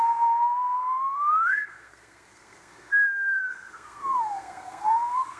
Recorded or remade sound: remade